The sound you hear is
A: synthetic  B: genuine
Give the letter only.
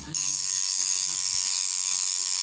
A